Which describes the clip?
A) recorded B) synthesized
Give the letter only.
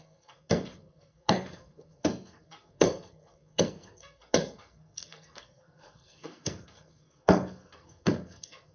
B